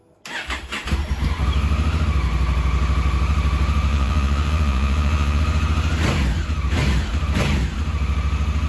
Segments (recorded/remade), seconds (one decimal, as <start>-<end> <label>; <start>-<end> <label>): 0.0-3.9 recorded; 3.9-5.4 remade; 5.4-8.7 recorded